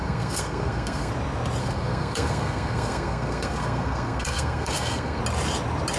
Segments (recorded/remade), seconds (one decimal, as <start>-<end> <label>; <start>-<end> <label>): 0.0-1.1 remade; 1.1-1.6 recorded; 1.6-5.2 remade; 5.2-6.0 recorded